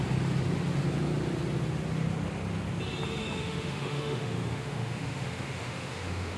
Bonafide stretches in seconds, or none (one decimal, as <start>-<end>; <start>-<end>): 0.0-3.2